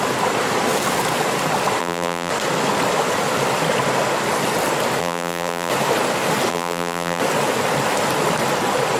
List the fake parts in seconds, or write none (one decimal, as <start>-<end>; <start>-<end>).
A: 1.8-2.3; 5.0-5.7; 6.5-7.2